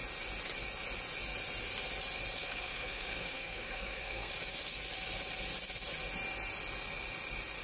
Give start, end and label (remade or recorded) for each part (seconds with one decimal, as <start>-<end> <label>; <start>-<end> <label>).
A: 0.0-2.4 recorded; 2.4-4.3 remade; 4.3-7.6 recorded